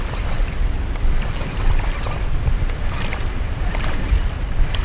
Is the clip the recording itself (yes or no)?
yes